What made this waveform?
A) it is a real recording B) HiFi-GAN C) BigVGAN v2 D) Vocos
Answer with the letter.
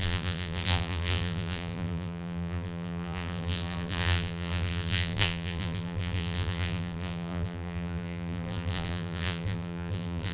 C